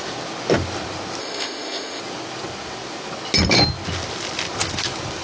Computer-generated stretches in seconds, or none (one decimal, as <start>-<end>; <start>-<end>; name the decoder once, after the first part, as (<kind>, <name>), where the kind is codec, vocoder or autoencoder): 1.2-2.0 (codec, ZipCodec)